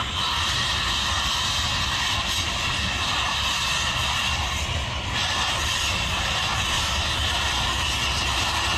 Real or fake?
real